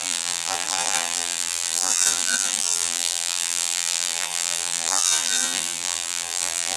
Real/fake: fake